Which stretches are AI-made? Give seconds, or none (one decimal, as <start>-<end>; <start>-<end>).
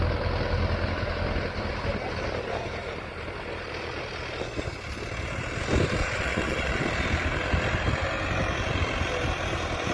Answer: 6.0-6.8